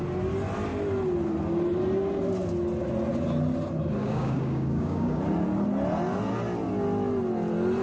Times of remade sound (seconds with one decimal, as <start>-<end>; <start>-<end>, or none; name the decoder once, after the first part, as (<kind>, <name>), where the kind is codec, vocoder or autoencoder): 4.0-5.2 (codec, DAC)